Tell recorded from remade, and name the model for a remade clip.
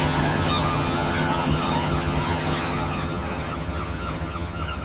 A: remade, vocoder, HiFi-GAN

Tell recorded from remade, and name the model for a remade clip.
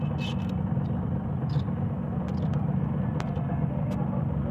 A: recorded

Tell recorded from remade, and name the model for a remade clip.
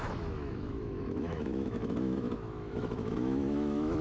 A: remade, autoencoder, DAC-VAE